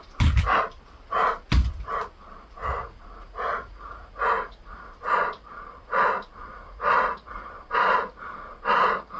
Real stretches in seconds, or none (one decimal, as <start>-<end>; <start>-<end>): 0.0-2.6; 4.9-6.4; 7.5-9.2